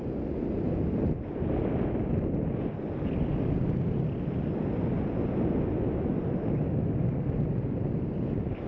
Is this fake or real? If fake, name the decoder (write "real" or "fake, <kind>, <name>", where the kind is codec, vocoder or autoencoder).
real